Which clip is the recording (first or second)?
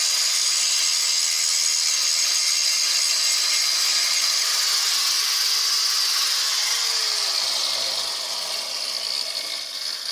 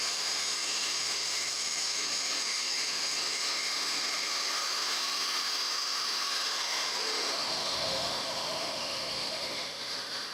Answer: first